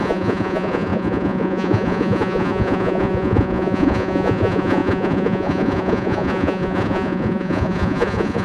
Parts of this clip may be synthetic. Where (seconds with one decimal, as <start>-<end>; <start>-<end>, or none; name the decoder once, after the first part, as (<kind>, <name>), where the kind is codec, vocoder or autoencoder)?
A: 0.0-8.4 (vocoder, Vocos)